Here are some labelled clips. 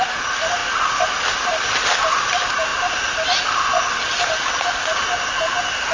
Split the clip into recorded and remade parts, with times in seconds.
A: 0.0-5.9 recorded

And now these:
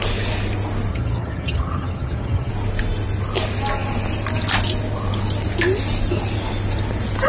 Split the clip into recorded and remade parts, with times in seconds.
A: 0.0-0.9 recorded; 0.9-2.5 remade; 2.5-7.3 recorded

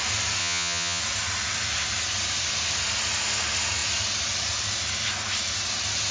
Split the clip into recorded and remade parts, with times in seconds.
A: 0.0-0.4 recorded; 0.4-1.0 remade; 1.0-6.1 recorded

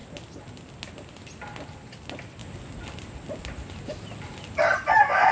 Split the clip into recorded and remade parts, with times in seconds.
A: 0.0-5.3 recorded

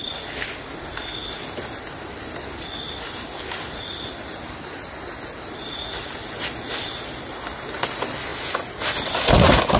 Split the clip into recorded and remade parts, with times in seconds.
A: 0.0-9.8 recorded

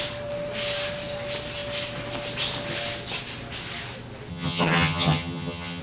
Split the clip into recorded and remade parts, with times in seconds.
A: 0.0-4.3 recorded; 4.3-5.8 remade

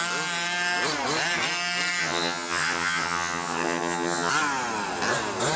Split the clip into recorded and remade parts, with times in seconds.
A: 0.0-2.0 recorded; 2.0-4.3 remade; 4.3-5.6 recorded

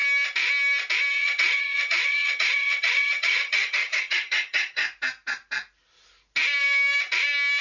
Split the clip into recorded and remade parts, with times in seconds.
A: 0.0-1.1 recorded; 1.1-4.8 remade; 4.8-7.6 recorded